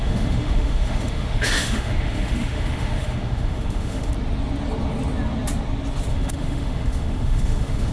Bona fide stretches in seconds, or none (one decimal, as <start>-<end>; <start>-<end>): 4.1-6.1